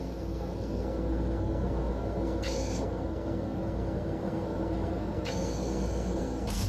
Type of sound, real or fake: fake